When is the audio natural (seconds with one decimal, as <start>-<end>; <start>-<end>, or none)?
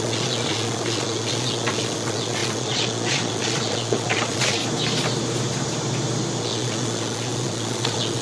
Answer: 4.6-6.4